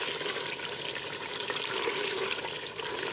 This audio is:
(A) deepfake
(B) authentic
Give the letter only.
B